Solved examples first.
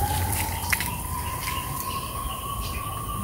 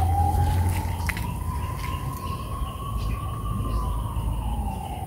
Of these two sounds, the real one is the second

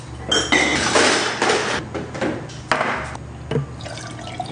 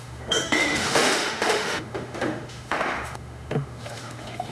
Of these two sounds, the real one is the first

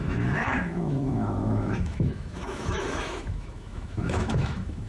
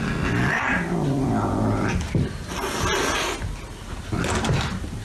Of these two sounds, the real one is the second